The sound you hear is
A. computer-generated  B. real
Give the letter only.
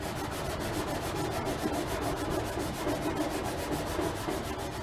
B